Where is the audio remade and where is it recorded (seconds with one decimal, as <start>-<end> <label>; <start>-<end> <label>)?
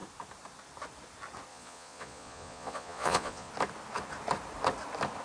0.0-1.5 recorded; 1.5-3.5 remade; 3.5-5.2 recorded